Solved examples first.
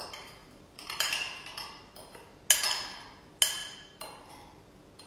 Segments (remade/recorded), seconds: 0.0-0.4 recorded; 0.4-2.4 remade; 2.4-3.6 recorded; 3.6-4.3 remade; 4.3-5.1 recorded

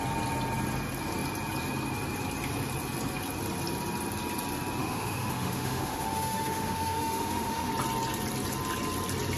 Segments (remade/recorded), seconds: 0.0-4.8 recorded; 4.8-7.7 remade; 7.7-9.4 recorded

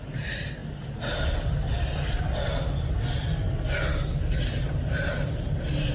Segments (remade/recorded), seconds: 0.0-5.9 recorded

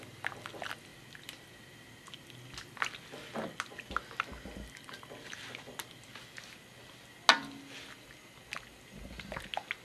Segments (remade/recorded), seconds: 0.0-9.8 recorded

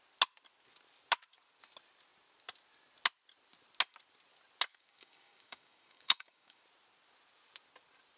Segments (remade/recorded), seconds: 0.0-4.7 recorded; 4.7-6.6 remade; 6.6-8.2 recorded

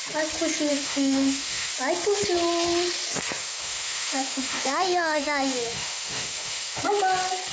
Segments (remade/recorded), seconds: 0.0-0.7 recorded; 0.7-1.7 remade; 1.7-3.4 recorded; 3.4-6.8 remade; 6.8-7.5 recorded

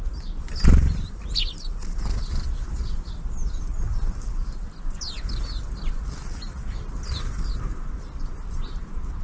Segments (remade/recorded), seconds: 0.0-9.2 recorded